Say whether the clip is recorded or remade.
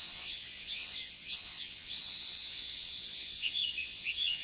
remade